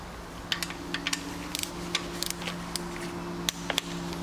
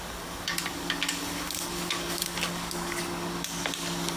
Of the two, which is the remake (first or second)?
second